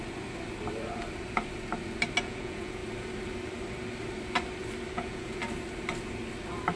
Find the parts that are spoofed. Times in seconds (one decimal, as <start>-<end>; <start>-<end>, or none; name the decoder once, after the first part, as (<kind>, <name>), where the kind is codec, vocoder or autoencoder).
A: 2.2-2.8 (vocoder, Vocos); 4.9-5.4